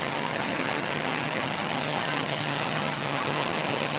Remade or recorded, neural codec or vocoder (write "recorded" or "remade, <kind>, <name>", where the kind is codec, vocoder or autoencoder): remade, vocoder, HiFi-GAN